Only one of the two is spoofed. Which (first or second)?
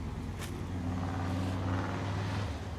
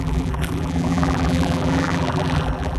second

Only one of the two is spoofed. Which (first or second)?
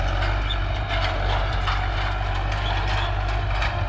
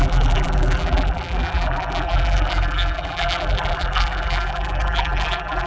second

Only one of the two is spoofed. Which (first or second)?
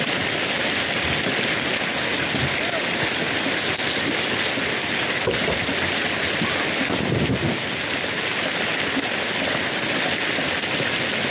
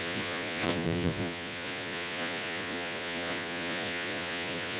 second